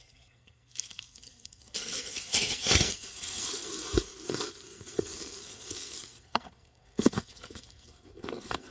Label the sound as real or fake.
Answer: fake